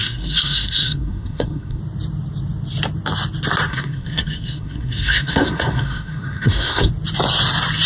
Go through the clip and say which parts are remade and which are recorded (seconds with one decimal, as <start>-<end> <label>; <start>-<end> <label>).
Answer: 0.0-1.8 remade; 1.8-3.7 recorded; 3.7-6.9 remade; 6.9-7.9 recorded